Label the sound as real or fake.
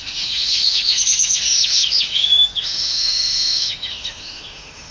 fake